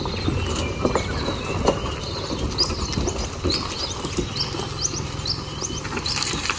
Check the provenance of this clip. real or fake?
real